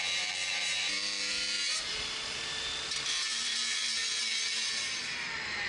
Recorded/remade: remade